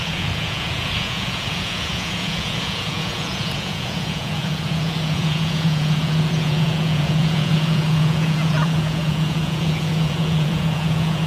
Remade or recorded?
remade